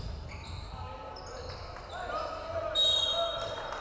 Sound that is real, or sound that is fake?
real